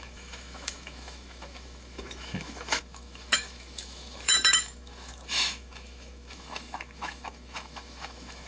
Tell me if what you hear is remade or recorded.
remade